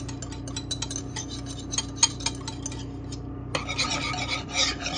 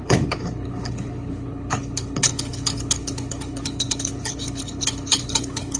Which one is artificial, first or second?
second